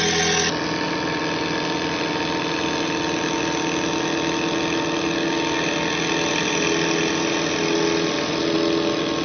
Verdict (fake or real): real